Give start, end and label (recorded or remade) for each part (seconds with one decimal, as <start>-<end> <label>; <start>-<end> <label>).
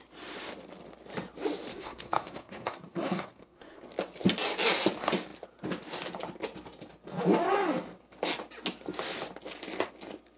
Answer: 0.0-1.7 recorded; 1.7-3.8 remade; 3.8-10.4 recorded